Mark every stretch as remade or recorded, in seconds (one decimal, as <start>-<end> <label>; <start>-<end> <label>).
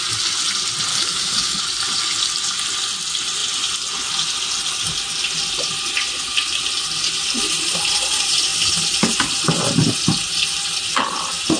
0.0-0.9 recorded; 0.9-1.6 remade; 1.6-11.6 recorded